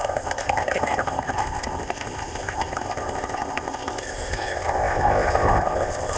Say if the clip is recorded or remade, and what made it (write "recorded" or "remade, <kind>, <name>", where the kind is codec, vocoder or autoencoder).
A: remade, codec, ZipCodec